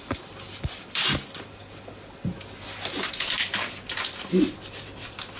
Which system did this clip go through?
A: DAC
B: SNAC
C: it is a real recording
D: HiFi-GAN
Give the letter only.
C